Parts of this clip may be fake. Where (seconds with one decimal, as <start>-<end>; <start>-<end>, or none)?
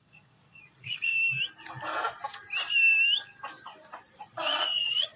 0.0-1.1; 4.2-5.2